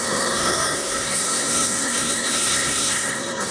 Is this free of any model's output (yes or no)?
no